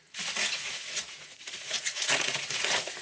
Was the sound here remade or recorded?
remade